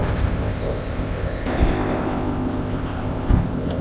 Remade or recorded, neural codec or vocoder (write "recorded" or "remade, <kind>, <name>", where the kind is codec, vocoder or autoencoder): remade, codec, ZipCodec